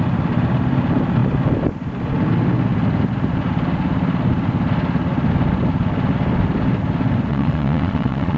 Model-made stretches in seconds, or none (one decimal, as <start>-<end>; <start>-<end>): 7.3-8.4